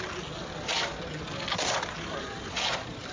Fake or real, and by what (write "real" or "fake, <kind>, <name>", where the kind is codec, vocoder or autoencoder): real